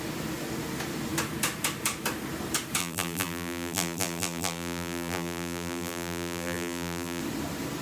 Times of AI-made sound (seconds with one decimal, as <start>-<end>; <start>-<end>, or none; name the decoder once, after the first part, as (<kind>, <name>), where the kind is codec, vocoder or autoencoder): 2.8-7.2 (vocoder, BigVGAN v2)